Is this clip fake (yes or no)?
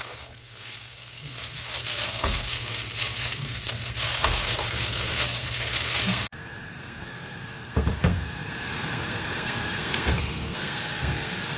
yes